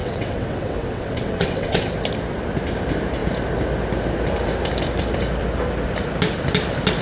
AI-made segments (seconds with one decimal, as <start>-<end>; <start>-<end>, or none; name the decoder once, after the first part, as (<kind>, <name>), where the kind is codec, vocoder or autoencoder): 0.0-1.9 (vocoder, WaveNeXt)